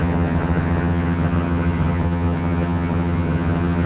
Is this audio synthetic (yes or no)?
yes